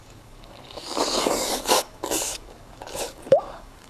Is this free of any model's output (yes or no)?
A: no